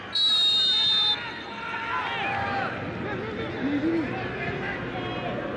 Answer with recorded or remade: recorded